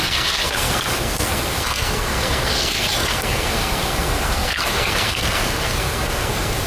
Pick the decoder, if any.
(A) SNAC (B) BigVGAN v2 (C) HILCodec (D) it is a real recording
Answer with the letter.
A